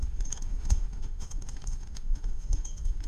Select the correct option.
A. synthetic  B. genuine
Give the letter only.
A